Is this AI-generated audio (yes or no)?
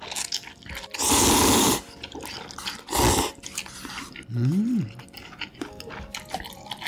no